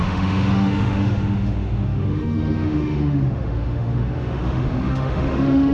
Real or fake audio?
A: fake